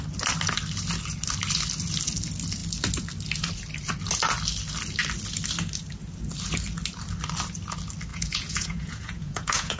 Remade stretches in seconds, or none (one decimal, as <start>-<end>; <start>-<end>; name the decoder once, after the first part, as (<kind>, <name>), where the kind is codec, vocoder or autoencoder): 8.1-9.8 (vocoder, Vocos)